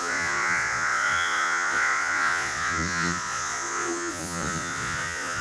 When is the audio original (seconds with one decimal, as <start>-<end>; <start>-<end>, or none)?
none